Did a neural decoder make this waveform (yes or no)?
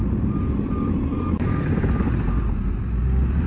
no